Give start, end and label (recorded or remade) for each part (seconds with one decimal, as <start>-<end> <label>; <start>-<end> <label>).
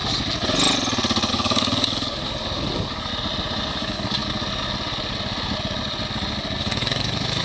0.0-1.3 recorded; 1.3-3.1 remade; 3.1-3.7 recorded; 3.7-4.2 remade; 4.2-6.6 recorded; 6.6-7.4 remade